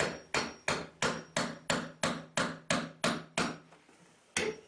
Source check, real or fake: real